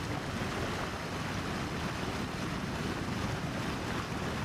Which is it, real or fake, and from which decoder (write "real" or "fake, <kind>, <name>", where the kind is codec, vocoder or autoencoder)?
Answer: real